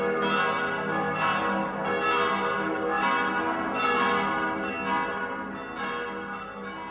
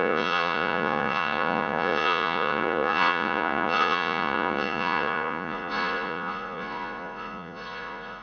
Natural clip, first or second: first